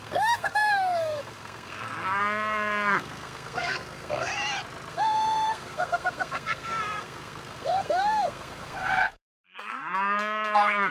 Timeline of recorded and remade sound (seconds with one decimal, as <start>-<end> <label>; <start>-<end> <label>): 0.0-4.3 remade; 4.3-4.9 recorded; 4.9-10.9 remade